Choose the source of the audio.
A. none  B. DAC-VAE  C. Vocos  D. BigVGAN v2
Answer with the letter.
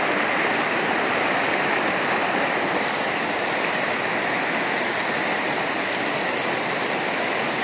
A